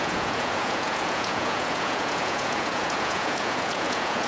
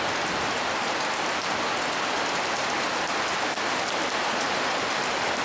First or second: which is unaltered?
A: second